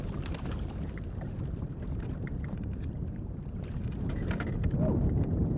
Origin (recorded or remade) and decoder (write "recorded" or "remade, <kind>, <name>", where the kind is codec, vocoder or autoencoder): remade, vocoder, BigVGAN v2